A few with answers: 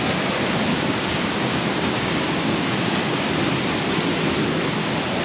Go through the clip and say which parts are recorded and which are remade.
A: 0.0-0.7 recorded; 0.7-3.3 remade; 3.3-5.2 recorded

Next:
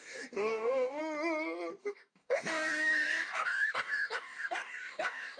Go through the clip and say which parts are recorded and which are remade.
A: 0.0-1.0 remade; 1.0-1.8 recorded; 1.8-5.4 remade